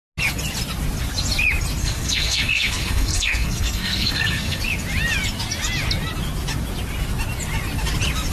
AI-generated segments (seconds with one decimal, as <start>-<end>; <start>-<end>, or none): 1.8-4.6